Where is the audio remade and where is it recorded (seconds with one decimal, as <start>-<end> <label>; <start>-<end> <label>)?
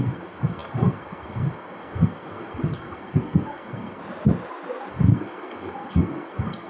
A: 0.0-4.0 remade; 4.0-4.9 recorded; 4.9-6.7 remade